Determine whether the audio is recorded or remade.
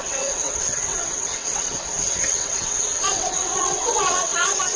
remade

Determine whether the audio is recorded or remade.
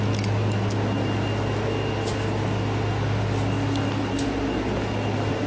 recorded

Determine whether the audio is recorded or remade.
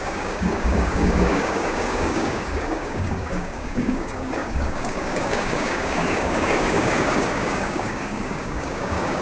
remade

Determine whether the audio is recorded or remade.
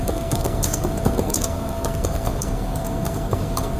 remade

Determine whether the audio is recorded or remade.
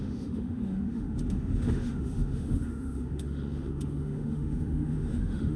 remade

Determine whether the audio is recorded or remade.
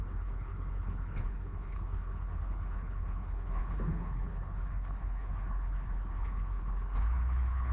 remade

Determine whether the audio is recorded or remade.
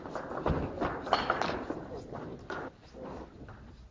recorded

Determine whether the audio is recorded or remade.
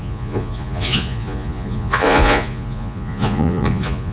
remade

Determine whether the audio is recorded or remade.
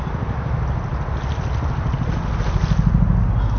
recorded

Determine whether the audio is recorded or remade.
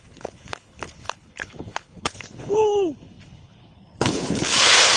remade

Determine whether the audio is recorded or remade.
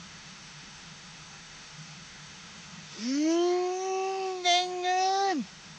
remade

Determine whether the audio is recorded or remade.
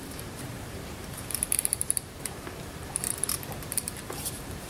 remade